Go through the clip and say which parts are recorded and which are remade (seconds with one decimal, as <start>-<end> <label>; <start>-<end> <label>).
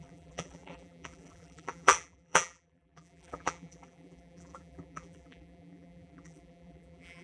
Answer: 0.0-7.2 remade